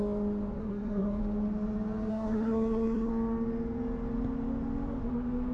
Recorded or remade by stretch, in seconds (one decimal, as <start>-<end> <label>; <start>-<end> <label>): 0.0-0.6 recorded; 0.6-1.2 remade; 1.2-2.1 recorded; 2.1-3.1 remade; 3.1-5.5 recorded